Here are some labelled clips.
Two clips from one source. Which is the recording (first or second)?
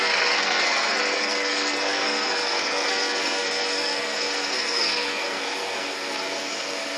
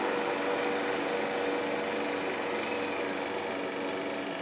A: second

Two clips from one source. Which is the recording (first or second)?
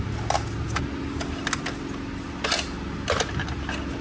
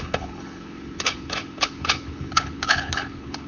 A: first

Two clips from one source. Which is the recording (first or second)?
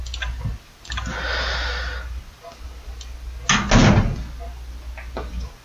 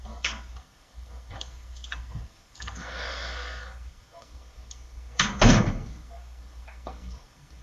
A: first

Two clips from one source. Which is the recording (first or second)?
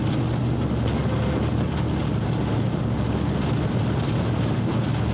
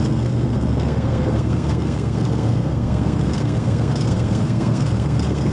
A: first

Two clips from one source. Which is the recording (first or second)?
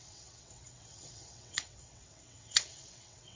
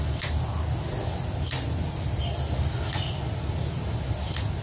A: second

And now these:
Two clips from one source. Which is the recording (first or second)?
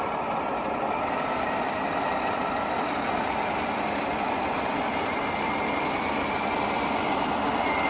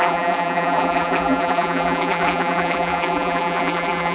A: first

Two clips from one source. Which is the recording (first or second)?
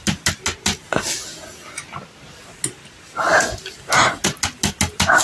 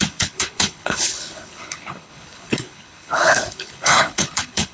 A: first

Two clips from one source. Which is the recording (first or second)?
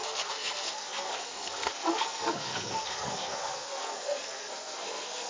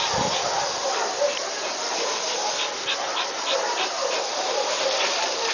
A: second